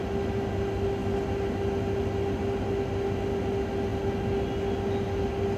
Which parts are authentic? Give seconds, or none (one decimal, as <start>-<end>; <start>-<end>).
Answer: 0.0-5.6